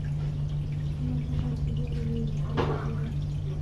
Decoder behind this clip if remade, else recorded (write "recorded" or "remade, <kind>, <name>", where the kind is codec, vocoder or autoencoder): recorded